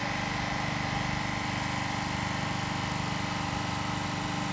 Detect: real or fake real